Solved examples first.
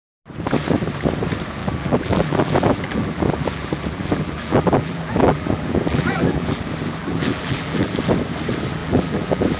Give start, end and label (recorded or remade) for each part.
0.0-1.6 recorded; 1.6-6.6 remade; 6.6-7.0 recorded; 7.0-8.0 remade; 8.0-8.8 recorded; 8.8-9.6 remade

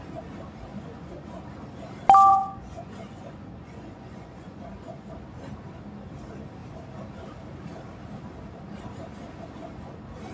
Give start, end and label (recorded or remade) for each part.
0.0-0.7 recorded; 0.7-1.4 remade; 1.4-2.3 recorded; 2.3-5.1 remade; 5.1-10.3 recorded

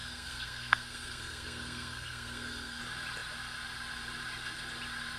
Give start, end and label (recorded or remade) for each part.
0.0-2.8 remade; 2.8-5.2 recorded

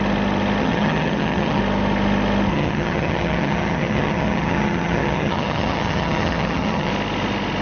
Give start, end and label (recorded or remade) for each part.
0.0-0.6 recorded; 0.6-1.6 remade; 1.6-2.5 recorded; 2.5-6.9 remade; 6.9-7.6 recorded